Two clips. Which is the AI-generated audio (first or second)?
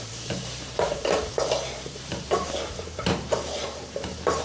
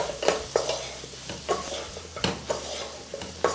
first